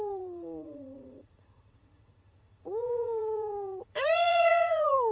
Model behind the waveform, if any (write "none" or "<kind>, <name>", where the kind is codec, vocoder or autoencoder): vocoder, Vocos